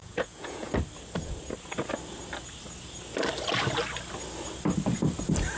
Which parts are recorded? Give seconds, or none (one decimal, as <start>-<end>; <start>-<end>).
0.7-5.6